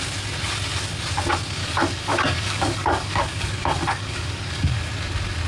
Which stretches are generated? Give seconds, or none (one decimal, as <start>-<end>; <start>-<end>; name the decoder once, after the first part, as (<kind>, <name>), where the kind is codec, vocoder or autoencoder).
1.6-4.9 (codec, DAC)